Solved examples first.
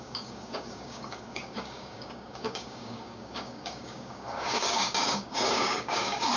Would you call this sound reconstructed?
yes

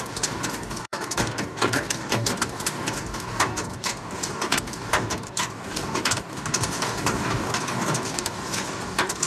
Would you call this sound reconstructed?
yes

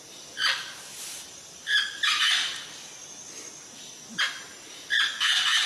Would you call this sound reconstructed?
no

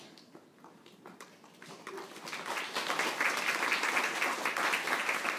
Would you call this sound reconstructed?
no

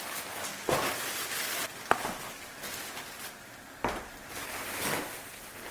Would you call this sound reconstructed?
no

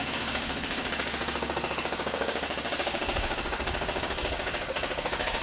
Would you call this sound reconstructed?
yes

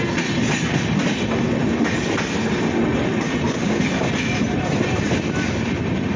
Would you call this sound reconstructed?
no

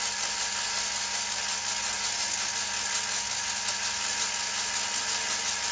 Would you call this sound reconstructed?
no